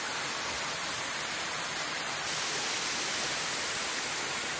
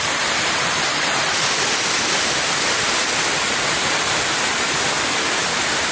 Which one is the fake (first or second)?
second